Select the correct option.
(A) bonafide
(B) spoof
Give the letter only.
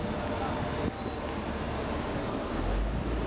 A